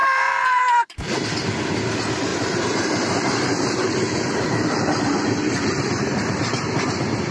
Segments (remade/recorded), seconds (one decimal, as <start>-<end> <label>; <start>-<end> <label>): 0.0-1.1 remade; 1.1-2.3 recorded; 2.3-6.7 remade; 6.7-7.3 recorded